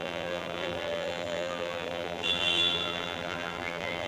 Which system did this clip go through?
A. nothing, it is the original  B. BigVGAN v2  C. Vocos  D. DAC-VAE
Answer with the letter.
B